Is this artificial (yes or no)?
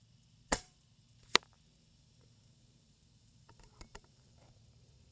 yes